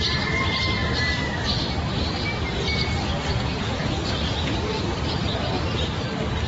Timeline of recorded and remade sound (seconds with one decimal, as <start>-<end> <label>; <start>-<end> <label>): 0.0-3.3 recorded; 3.3-4.0 remade; 4.0-6.5 recorded